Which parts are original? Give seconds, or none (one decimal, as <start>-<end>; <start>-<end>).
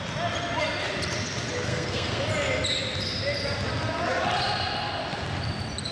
0.0-1.7; 2.2-5.9